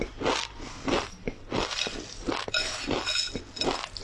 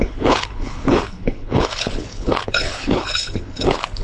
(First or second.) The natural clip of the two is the first